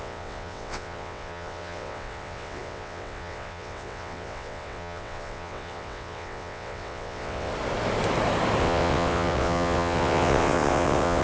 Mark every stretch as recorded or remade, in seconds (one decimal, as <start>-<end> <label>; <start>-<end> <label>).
0.0-7.5 remade; 7.5-8.6 recorded; 8.6-11.2 remade